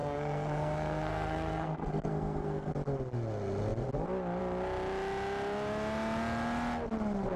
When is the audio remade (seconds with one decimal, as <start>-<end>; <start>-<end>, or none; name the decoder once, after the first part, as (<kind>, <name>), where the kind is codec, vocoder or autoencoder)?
0.0-2.7 (codec, SNAC)